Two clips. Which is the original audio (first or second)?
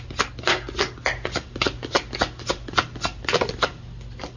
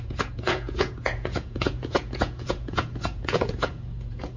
first